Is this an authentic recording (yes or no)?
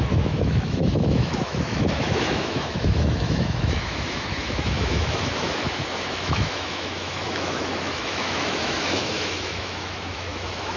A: no